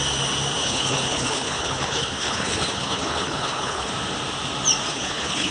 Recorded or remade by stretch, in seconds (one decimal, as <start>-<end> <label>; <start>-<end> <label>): 0.0-0.6 recorded; 0.6-3.9 remade; 3.9-4.9 recorded; 4.9-5.5 remade